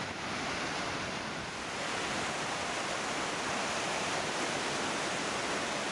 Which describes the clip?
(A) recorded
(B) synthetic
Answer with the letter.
A